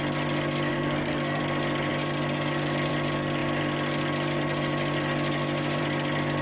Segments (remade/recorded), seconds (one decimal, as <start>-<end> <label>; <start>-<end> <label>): 0.0-0.7 recorded; 0.7-1.4 remade; 1.4-6.4 recorded